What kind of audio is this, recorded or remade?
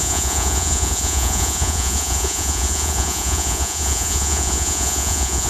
remade